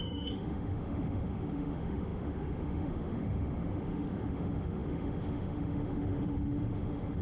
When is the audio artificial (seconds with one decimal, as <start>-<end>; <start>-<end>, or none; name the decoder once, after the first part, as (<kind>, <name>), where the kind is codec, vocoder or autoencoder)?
0.0-7.2 (autoencoder, DAC-VAE)